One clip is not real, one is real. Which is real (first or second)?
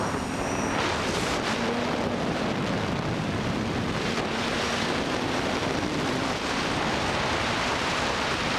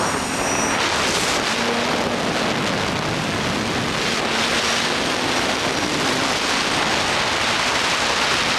second